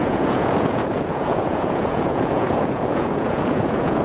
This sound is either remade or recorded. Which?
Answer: remade